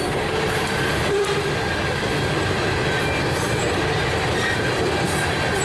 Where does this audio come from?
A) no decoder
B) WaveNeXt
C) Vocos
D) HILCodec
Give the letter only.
A